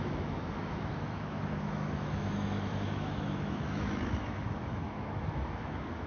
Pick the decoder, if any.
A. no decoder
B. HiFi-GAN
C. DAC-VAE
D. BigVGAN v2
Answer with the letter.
C